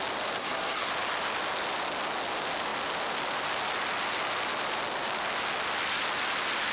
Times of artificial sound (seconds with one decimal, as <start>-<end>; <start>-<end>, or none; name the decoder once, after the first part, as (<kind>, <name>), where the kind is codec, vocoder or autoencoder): 0.4-0.9 (codec, SNAC)